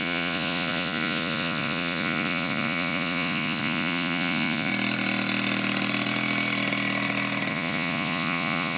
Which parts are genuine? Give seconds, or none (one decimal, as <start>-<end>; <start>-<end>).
4.7-7.5